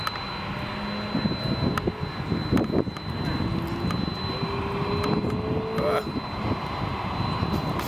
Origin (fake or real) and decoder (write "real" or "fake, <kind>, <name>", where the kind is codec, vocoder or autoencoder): real